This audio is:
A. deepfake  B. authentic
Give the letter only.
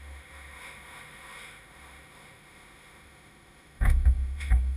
A